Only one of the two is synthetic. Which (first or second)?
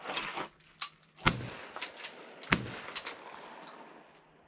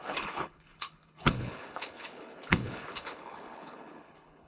second